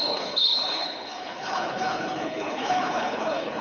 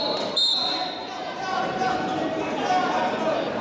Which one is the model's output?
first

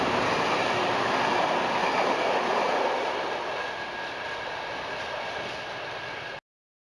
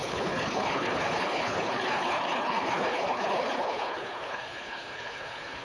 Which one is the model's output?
second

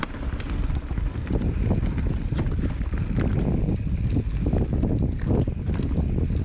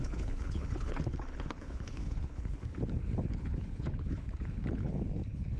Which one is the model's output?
second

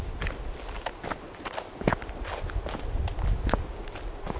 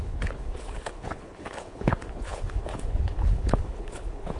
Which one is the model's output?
second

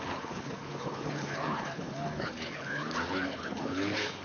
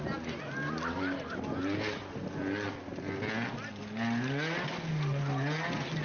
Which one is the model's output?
first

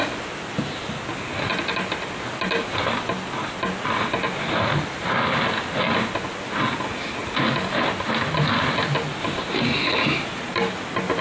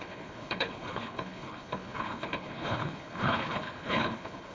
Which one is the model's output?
second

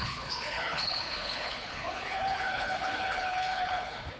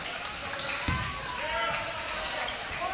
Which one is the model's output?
first